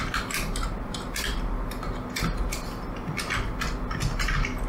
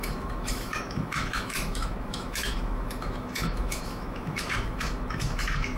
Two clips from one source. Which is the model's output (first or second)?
second